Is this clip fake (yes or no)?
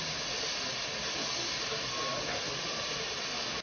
no